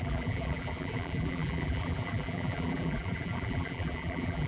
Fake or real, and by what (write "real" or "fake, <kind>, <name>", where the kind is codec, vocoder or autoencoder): fake, vocoder, BigVGAN v2